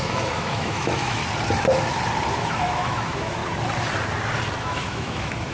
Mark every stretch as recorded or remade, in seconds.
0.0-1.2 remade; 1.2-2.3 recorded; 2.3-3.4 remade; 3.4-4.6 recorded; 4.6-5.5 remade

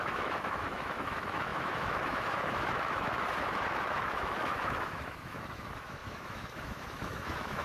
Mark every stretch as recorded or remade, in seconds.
0.0-7.6 remade

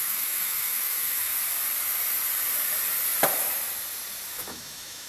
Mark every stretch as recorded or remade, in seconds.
0.0-1.3 remade; 1.3-4.3 recorded; 4.3-5.1 remade